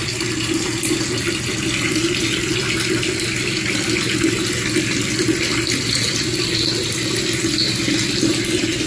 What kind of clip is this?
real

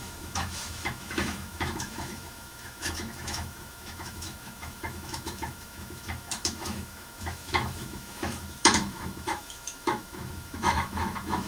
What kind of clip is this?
fake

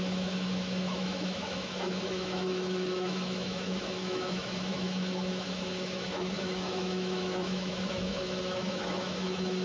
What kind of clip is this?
fake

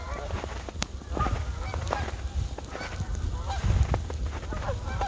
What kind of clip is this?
real